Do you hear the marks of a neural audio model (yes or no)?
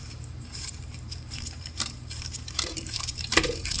yes